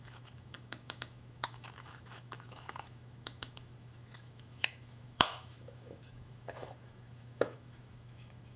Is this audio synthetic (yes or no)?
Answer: yes